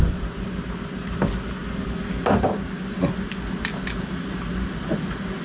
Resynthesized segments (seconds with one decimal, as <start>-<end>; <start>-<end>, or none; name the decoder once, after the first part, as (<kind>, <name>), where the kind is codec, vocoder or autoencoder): none